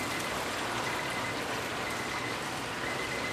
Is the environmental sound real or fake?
real